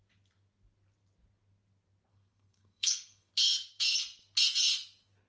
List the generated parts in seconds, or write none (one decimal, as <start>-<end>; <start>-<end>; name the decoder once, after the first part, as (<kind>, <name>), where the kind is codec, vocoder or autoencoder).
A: 2.1-3.3 (codec, SNAC)